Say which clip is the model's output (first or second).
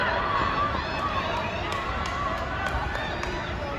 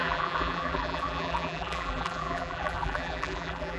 second